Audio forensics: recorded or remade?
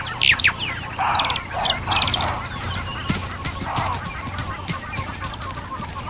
recorded